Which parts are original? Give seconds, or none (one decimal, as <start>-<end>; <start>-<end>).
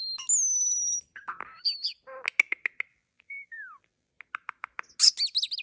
0.0-2.9; 4.1-5.6